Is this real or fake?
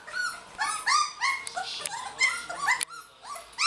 real